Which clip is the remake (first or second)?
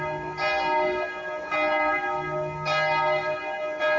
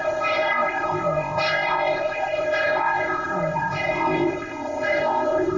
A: second